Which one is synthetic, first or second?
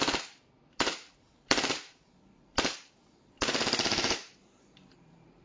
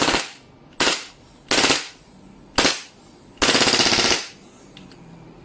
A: first